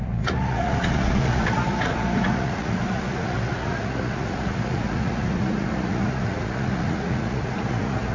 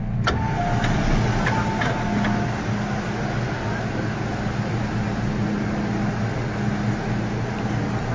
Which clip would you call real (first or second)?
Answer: second